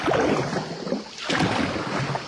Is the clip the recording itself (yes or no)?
yes